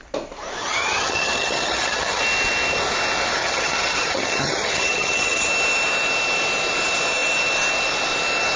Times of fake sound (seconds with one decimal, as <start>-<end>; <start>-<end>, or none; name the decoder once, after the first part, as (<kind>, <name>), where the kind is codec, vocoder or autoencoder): 0.6-2.2 (vocoder, HiFi-GAN); 3.4-5.5